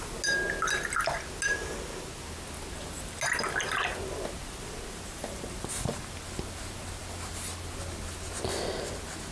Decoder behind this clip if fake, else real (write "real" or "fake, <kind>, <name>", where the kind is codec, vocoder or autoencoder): real